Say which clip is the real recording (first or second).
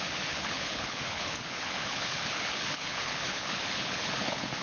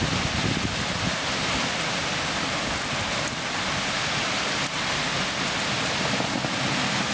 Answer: second